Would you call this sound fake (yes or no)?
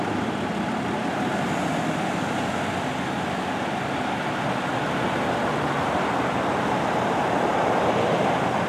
no